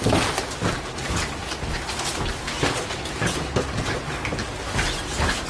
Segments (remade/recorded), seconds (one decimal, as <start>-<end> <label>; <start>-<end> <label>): 0.0-5.5 recorded